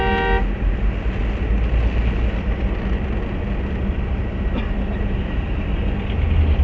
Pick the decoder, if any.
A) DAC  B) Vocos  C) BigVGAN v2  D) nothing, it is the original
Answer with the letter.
D